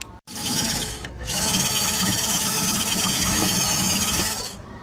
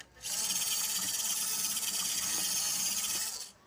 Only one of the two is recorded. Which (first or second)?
second